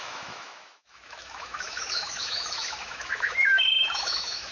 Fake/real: fake